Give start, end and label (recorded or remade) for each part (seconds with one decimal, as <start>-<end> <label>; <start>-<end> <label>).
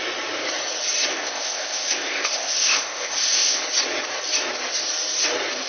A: 0.0-1.1 recorded; 1.1-3.6 remade; 3.6-5.7 recorded